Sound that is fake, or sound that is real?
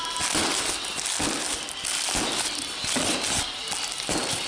real